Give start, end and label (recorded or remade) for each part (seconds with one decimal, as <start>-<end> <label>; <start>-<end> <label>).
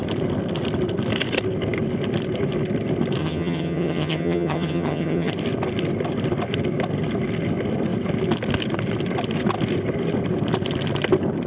0.0-3.2 recorded; 3.2-5.3 remade; 5.3-11.5 recorded